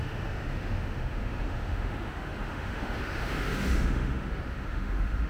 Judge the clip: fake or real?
fake